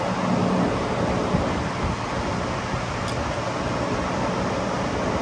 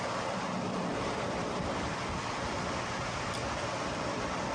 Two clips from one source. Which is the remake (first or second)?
second